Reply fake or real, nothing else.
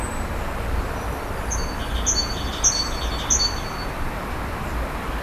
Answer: real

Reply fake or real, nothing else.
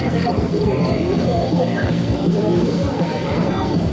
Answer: fake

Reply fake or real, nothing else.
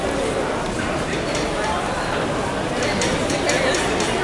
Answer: real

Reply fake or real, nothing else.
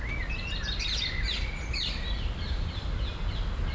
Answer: real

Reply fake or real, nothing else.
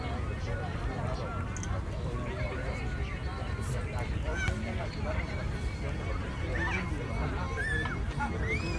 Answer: real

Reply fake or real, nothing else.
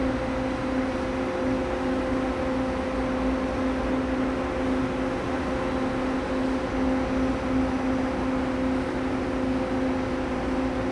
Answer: real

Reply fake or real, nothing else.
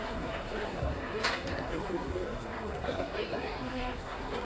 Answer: fake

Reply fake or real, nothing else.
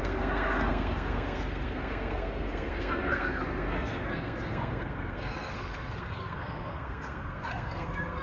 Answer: fake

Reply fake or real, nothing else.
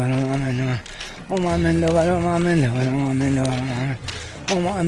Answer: real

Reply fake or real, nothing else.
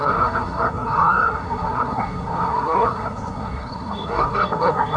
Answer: fake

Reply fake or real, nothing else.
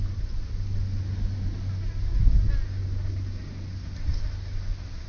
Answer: real